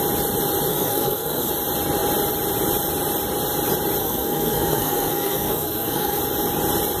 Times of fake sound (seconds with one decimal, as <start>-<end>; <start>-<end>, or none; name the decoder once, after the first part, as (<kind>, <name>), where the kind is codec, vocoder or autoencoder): 0.7-1.5 (codec, SNAC); 4.0-6.2